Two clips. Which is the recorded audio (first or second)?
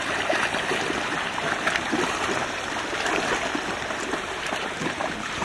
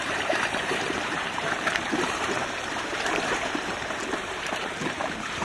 first